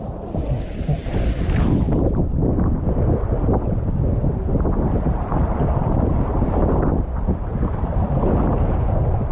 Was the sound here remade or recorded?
recorded